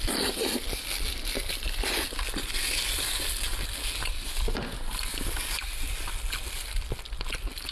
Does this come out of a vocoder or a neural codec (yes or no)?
no